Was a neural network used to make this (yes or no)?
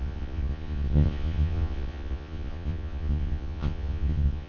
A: yes